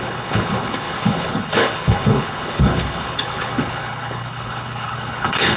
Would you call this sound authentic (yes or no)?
no